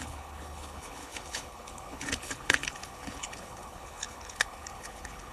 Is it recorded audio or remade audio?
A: remade